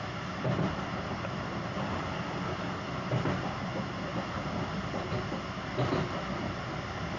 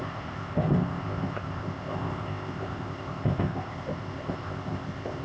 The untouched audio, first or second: first